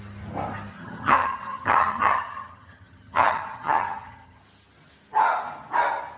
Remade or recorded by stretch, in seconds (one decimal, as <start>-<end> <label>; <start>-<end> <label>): 0.0-0.7 recorded; 0.7-4.4 remade; 4.4-6.2 recorded